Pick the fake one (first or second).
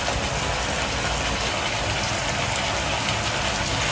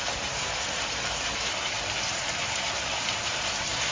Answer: second